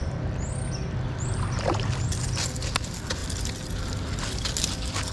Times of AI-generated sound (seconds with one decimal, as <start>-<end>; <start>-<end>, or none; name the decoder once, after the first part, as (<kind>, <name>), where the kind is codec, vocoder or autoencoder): none